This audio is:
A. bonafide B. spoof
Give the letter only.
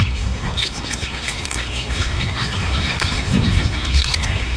B